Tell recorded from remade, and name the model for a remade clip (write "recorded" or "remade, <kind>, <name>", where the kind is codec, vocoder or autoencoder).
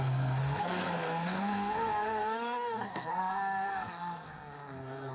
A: remade, codec, SNAC